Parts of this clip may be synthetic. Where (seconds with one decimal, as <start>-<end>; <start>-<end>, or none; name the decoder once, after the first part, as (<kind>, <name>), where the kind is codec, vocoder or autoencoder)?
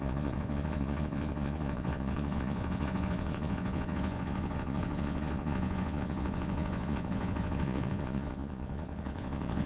0.0-9.7 (vocoder, Vocos)